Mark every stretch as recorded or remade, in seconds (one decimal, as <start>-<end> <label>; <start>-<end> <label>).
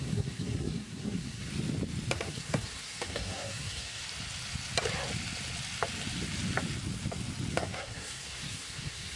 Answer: 0.0-1.5 remade; 1.5-2.1 recorded; 2.1-4.0 remade; 4.0-7.5 recorded; 7.5-9.2 remade